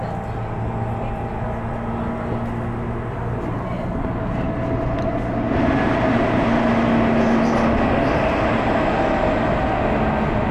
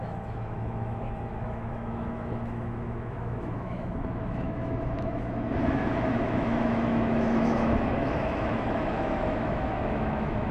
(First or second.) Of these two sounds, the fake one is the second